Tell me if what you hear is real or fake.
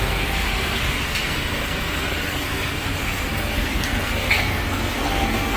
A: fake